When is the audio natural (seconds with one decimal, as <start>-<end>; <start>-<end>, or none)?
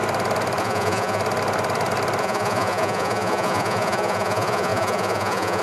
0.0-0.6; 1.2-2.2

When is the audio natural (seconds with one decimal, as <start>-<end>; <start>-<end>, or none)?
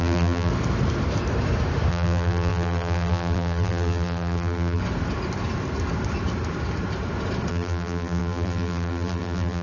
0.5-1.9; 4.8-7.5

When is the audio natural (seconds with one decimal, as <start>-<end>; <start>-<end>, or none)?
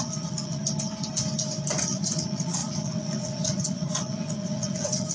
0.6-1.8